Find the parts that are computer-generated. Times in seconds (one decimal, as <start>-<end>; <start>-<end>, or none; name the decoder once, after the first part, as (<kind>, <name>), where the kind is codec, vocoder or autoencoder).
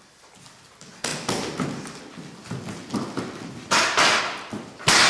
none